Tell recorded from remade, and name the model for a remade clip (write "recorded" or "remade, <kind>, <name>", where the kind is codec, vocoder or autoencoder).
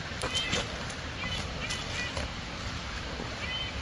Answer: recorded